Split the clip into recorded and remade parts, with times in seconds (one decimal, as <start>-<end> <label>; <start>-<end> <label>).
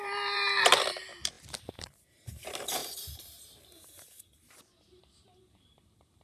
0.0-1.1 remade; 1.1-1.7 recorded; 1.7-6.2 remade